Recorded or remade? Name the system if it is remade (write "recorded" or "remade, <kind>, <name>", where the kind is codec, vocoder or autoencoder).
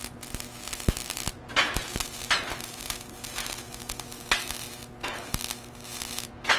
recorded